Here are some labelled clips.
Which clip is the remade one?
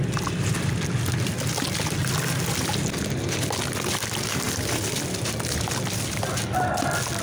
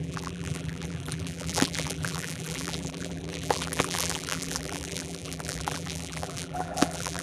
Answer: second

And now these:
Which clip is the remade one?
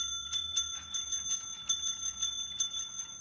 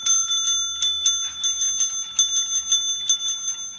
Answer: first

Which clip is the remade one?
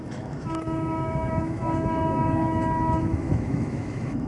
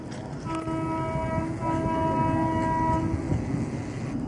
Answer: first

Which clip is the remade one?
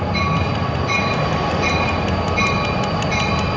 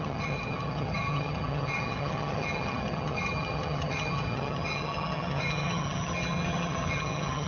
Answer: second